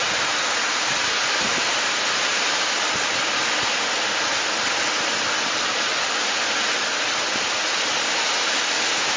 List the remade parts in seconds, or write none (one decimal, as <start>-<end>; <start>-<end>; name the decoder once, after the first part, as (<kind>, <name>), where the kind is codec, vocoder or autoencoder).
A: none